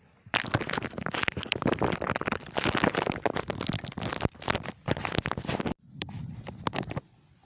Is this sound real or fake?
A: fake